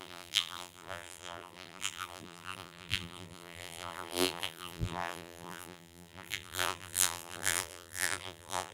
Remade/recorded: remade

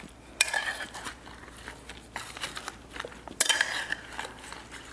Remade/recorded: remade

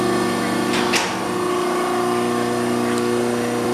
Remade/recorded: recorded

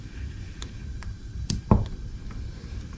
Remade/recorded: recorded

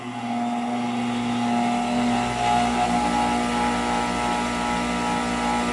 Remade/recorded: recorded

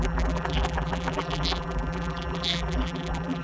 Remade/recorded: remade